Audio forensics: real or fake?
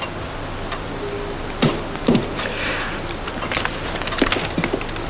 real